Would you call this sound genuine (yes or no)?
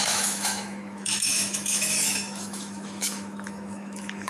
no